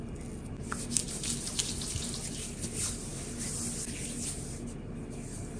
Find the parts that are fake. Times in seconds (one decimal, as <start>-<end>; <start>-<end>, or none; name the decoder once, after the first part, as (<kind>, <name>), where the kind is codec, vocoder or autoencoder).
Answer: none